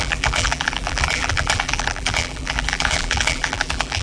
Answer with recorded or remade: remade